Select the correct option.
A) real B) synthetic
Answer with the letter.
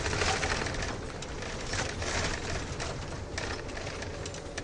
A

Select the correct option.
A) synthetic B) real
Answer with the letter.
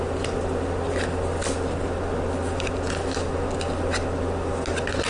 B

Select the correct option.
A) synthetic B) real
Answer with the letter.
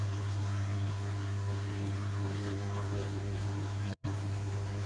A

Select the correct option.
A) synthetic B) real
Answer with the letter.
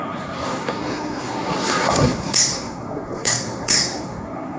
A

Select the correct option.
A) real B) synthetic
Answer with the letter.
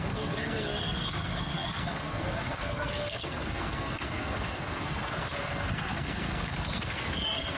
B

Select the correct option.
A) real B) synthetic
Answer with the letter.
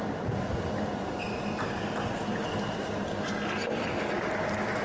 A